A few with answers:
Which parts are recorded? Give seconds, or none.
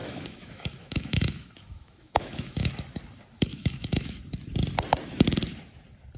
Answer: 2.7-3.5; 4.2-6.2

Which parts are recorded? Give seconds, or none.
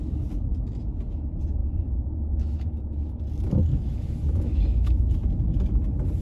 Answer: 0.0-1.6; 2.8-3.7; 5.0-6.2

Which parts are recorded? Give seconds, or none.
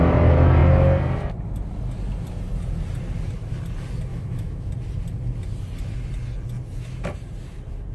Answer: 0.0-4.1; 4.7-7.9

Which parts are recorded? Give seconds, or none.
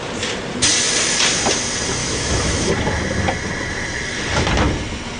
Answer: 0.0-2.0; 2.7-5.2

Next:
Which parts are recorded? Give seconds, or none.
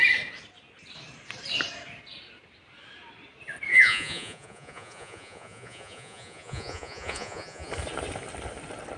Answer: 0.0-3.7; 7.7-9.0